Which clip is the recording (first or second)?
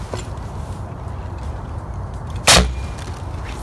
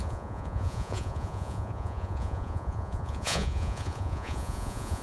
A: first